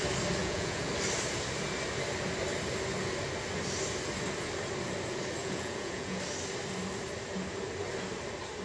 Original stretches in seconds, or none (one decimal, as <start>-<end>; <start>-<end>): 0.0-0.4; 0.9-5.4; 6.2-8.6